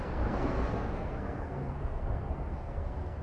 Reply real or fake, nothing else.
fake